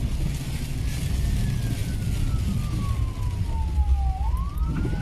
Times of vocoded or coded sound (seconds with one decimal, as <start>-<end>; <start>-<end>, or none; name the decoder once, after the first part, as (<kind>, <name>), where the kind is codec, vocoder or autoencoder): none